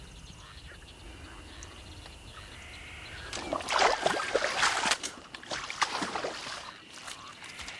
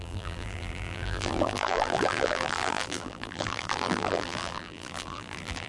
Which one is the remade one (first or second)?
second